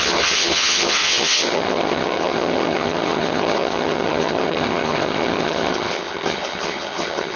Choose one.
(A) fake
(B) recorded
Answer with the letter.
A